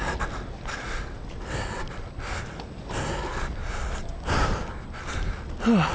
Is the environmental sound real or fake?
real